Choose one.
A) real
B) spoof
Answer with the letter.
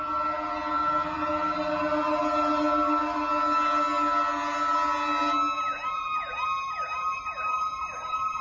A